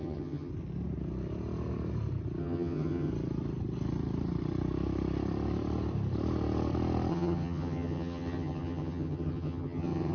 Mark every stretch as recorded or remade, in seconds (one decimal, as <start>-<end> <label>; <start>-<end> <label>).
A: 0.0-0.5 remade; 0.5-2.4 recorded; 2.4-3.1 remade; 3.1-7.1 recorded; 7.1-10.1 remade